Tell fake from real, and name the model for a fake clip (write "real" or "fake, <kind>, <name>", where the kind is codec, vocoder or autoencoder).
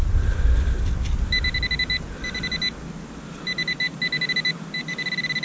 real